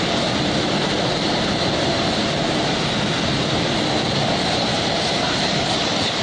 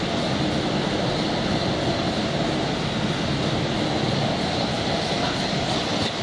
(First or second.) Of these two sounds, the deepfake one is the first